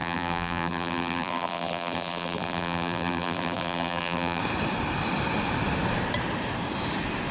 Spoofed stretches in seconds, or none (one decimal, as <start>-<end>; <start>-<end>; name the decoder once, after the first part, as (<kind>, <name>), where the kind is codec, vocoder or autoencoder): 0.0-4.4 (vocoder, BigVGAN v2)